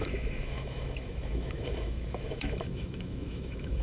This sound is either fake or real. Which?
fake